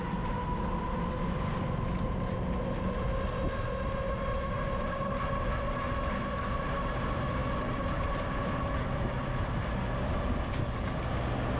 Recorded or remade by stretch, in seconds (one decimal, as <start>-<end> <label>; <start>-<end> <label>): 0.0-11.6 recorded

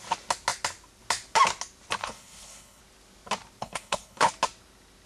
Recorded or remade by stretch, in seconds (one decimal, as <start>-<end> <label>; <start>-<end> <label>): 0.0-2.0 recorded; 2.0-2.8 remade; 2.8-3.6 recorded; 3.6-4.3 remade; 4.3-5.1 recorded

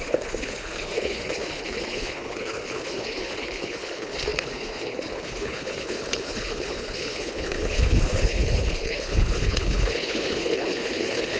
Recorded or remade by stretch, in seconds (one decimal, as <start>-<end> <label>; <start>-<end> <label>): 0.0-11.4 remade

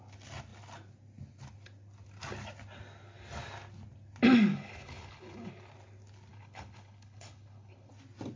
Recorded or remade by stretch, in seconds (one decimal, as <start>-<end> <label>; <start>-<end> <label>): 0.0-4.5 recorded; 4.5-5.5 remade; 5.5-6.3 recorded; 6.3-7.9 remade; 7.9-8.4 recorded